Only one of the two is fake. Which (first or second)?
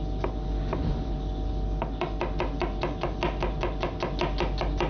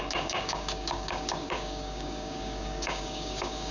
second